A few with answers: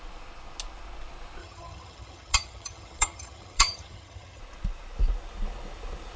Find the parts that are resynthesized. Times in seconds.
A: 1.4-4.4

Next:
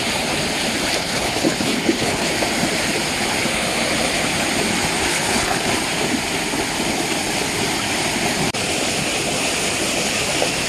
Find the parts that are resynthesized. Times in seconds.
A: 1.0-2.3; 5.1-5.7

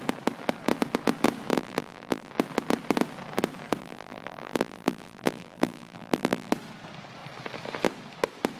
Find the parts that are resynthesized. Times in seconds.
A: 1.5-2.3; 3.8-6.5

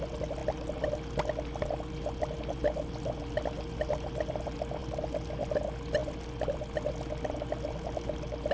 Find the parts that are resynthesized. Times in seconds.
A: none

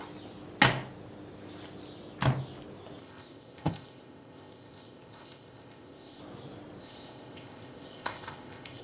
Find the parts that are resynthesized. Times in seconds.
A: 3.0-6.2; 6.8-8.8